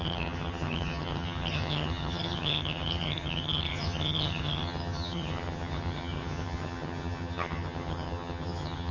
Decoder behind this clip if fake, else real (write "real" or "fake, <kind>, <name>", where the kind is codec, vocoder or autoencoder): fake, vocoder, HiFi-GAN